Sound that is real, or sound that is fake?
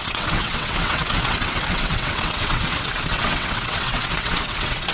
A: fake